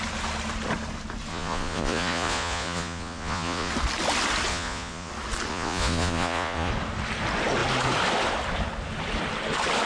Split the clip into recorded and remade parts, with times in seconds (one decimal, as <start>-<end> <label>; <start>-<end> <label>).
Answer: 0.0-1.3 recorded; 1.3-3.7 remade; 3.7-4.5 recorded; 4.5-5.1 remade; 5.1-5.5 recorded; 5.5-6.7 remade; 6.7-9.9 recorded